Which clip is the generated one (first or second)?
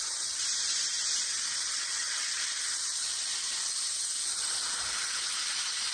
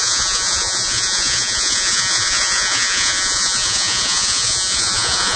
second